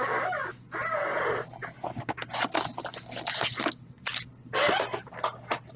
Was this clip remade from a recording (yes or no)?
no